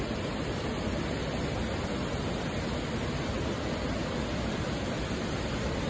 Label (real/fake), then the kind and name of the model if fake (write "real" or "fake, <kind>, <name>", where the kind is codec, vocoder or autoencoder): real